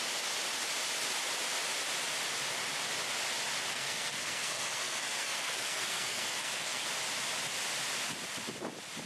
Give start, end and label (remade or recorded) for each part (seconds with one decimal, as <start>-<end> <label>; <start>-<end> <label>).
0.0-3.7 recorded; 3.7-6.9 remade; 6.9-9.1 recorded